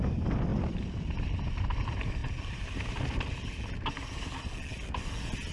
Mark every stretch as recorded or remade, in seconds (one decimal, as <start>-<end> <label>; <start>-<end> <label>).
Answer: 0.0-0.5 recorded; 0.5-1.0 remade; 1.0-5.5 recorded